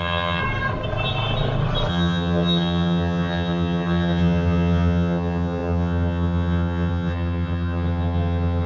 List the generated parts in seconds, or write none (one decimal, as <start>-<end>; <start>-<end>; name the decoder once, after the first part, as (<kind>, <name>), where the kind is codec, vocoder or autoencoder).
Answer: 0.0-0.4 (vocoder, HiFi-GAN); 1.9-8.7